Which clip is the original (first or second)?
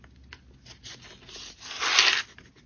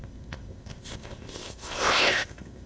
first